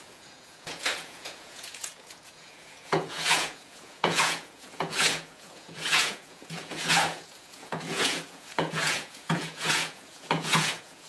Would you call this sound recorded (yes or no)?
no